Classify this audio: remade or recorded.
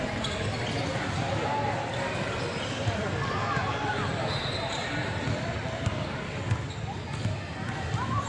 recorded